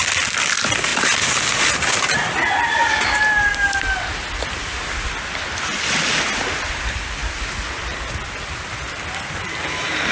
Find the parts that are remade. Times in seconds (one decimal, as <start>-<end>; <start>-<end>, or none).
none